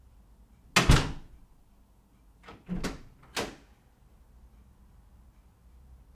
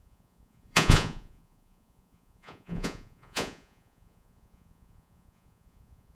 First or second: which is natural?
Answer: first